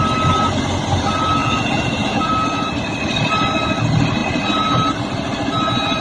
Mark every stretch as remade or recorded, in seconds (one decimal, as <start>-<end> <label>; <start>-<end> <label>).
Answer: 0.0-1.4 recorded; 1.4-2.3 remade; 2.3-6.0 recorded